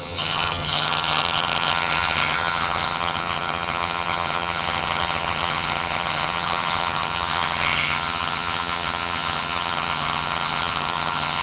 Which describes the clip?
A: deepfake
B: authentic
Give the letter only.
A